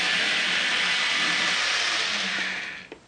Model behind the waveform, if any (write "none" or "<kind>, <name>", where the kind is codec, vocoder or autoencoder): none